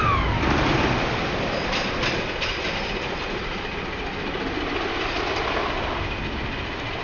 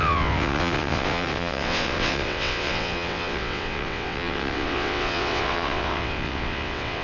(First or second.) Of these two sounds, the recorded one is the first